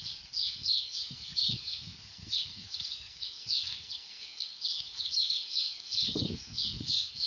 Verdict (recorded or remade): remade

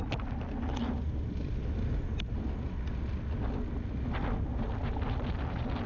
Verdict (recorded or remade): recorded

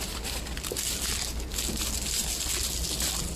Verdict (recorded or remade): recorded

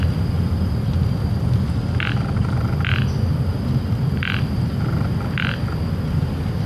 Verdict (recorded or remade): recorded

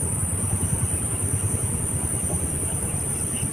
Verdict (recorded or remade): remade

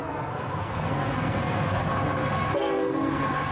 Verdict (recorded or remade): remade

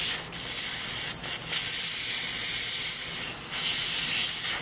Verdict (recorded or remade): recorded